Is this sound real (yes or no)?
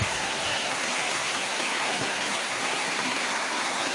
no